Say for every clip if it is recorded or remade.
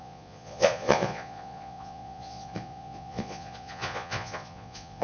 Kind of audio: remade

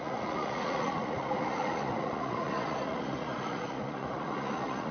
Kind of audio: remade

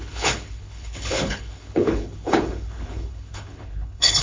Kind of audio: remade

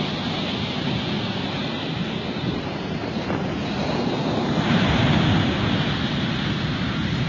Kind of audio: recorded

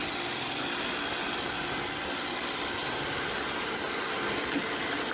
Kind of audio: recorded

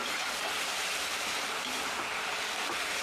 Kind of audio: recorded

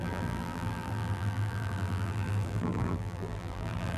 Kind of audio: remade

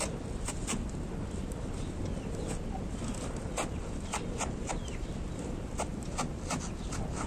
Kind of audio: recorded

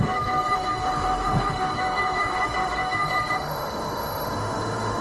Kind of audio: remade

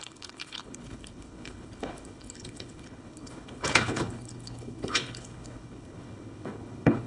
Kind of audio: remade